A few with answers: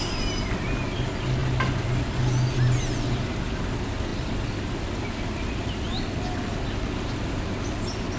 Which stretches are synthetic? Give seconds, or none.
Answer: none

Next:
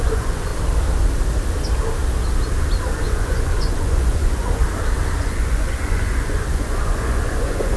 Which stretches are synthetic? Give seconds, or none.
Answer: 0.0-0.5 (vocoder, Vocos); 2.9-4.6; 5.2-7.8

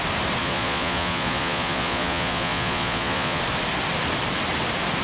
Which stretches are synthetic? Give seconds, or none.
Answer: 0.4-3.4 (vocoder, Vocos)

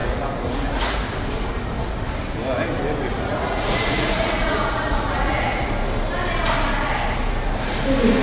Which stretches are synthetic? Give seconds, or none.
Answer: 0.0-1.0 (vocoder, Vocos); 3.1-5.7

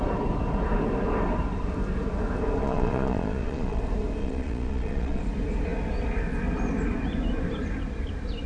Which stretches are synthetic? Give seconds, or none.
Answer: 2.6-3.8 (vocoder, Vocos); 4.2-5.2

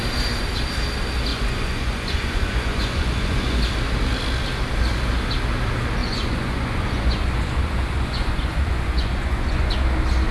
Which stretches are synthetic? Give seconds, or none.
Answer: 1.3-3.6 (vocoder, Vocos); 6.0-9.7

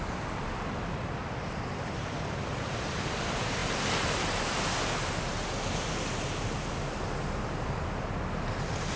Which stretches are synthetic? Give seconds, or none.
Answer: none